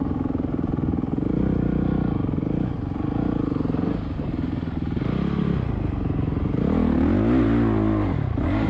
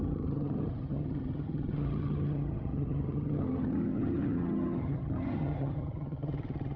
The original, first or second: first